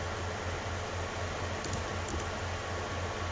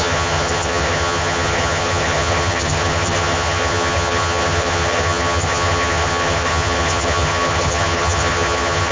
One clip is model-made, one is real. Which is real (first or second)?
first